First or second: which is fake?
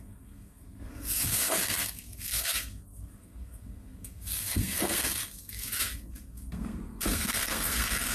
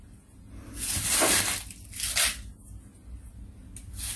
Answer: first